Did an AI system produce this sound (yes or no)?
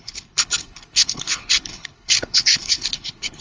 yes